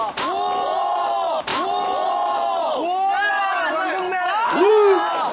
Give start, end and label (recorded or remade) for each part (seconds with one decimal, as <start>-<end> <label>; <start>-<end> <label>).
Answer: 0.0-0.6 recorded; 0.6-1.1 remade; 1.1-1.5 recorded; 1.5-4.7 remade; 4.7-5.3 recorded